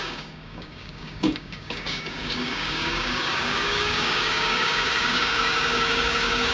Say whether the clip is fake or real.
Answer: fake